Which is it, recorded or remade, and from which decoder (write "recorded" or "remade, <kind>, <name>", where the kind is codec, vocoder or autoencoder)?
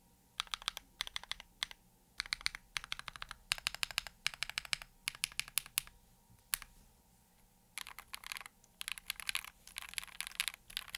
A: recorded